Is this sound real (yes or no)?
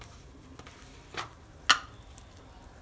yes